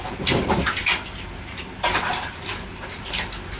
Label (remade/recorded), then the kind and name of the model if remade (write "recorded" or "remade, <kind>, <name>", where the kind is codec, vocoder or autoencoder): recorded